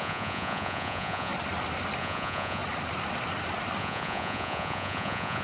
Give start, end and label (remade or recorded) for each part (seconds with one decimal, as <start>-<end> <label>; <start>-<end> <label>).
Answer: 0.0-1.3 remade; 1.3-2.0 recorded; 2.0-2.6 remade; 2.6-3.8 recorded; 3.8-5.4 remade